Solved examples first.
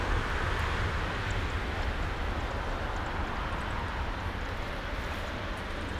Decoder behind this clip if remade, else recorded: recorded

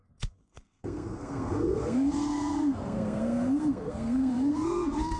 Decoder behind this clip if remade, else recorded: remade, codec, SNAC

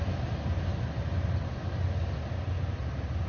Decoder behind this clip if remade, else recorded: recorded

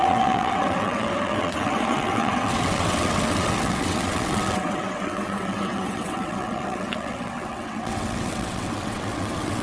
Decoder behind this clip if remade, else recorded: remade, vocoder, WaveNeXt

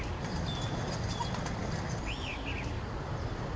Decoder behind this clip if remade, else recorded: recorded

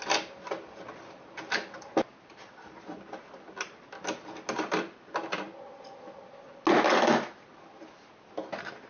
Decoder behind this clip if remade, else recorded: recorded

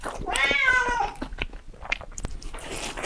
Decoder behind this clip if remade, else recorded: recorded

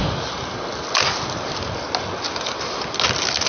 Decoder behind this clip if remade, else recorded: recorded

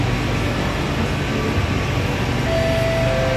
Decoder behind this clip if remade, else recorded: recorded